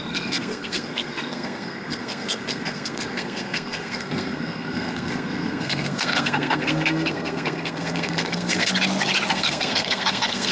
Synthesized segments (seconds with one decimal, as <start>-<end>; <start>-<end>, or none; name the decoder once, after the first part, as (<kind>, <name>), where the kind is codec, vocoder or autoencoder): 0.0-8.7 (codec, SNAC); 9.3-10.5